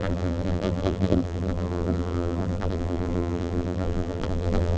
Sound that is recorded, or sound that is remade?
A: remade